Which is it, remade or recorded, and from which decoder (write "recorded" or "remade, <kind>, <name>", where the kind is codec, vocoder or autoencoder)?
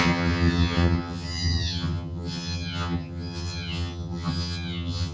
remade, vocoder, HiFi-GAN